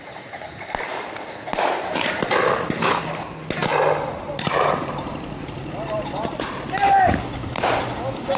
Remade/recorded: recorded